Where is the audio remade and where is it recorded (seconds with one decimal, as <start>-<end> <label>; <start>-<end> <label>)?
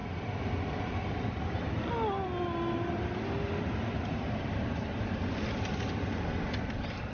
0.0-7.1 recorded